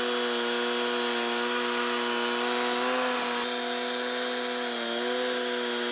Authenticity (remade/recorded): recorded